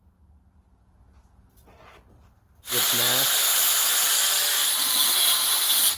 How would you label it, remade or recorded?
recorded